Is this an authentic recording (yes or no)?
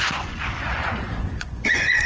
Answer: no